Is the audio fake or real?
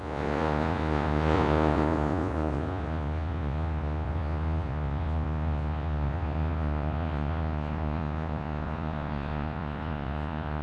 fake